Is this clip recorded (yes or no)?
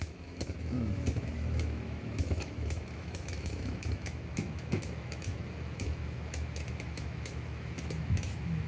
no